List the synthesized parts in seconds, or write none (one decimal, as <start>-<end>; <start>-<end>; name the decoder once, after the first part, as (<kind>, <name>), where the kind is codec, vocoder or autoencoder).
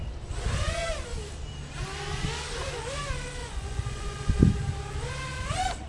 3.4-4.5 (vocoder, Vocos)